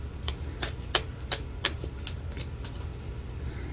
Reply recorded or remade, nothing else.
recorded